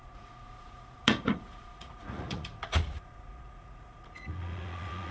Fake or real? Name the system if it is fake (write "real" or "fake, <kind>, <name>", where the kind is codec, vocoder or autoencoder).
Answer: fake, vocoder, Vocos